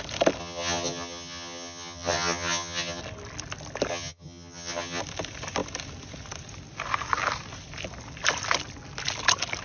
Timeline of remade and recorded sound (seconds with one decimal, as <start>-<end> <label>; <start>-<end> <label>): 0.0-0.4 recorded; 0.4-3.0 remade; 3.0-3.9 recorded; 3.9-5.0 remade; 5.0-9.6 recorded